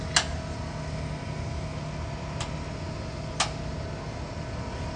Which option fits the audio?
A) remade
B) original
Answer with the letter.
B